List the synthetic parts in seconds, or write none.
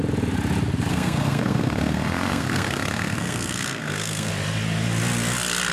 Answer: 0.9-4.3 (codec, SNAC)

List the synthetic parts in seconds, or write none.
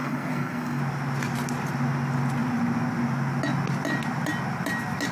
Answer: 0.0-0.8 (codec, SNAC)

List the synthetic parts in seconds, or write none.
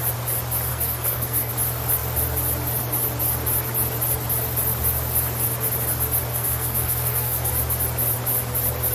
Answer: 0.7-1.5 (codec, SNAC); 6.3-7.5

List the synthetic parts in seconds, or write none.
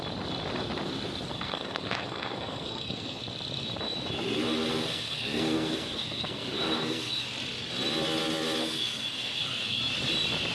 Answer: 1.3-3.2 (codec, SNAC); 4.7-7.2; 8.6-9.8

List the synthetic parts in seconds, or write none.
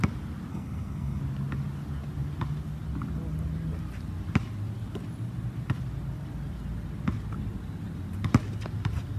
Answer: 0.5-1.2 (codec, SNAC)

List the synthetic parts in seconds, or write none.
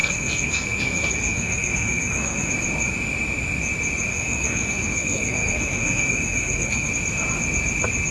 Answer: 0.0-2.5 (codec, SNAC); 4.1-6.9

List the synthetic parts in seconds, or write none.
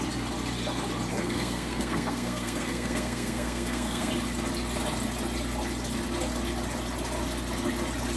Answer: 1.1-4.1 (codec, SNAC)